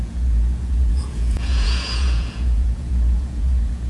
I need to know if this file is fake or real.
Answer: fake